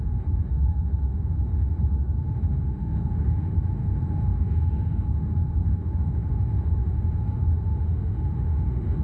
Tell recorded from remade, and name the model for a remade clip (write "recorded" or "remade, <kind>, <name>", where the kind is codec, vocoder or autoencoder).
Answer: remade, autoencoder, DAC-VAE